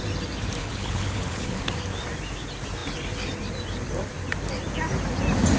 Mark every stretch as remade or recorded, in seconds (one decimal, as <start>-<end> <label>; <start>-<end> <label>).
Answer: 0.0-0.6 recorded; 0.6-1.6 remade; 1.6-5.6 recorded